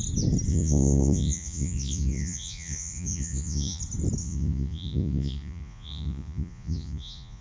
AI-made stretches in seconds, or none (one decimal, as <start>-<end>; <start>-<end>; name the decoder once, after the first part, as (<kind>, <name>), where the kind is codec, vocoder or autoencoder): 0.5-3.8 (vocoder, Vocos); 4.2-7.4